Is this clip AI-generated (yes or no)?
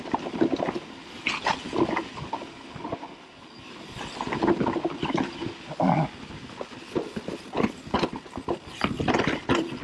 no